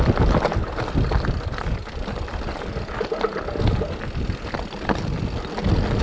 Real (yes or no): yes